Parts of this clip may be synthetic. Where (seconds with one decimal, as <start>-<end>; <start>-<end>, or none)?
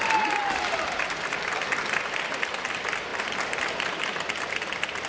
none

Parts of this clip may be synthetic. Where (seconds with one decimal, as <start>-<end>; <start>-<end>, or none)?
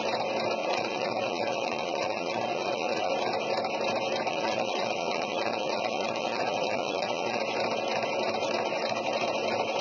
0.6-3.1; 4.3-7.4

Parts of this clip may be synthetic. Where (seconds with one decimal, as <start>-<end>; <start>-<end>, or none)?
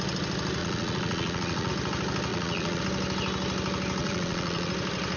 0.6-1.7; 2.3-2.8; 4.0-4.7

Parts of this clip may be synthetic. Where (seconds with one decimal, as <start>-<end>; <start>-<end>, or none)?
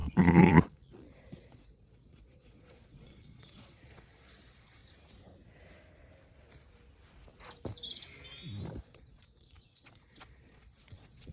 0.0-4.8; 8.8-11.3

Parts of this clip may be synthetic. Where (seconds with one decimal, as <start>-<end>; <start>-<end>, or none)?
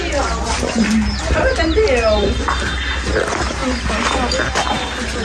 none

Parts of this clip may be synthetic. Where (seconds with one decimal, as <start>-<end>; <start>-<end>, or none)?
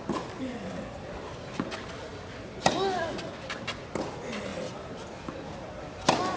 none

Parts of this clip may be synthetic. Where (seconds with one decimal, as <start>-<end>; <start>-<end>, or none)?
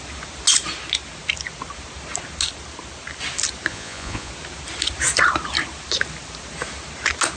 3.7-4.3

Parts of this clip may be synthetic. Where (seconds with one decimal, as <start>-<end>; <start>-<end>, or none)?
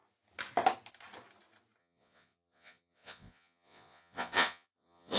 1.8-5.2